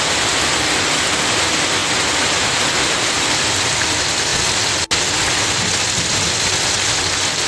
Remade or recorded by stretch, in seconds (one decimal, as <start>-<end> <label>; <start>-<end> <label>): 0.0-4.3 remade; 4.3-7.5 recorded